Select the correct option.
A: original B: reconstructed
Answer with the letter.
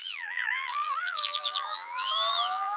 B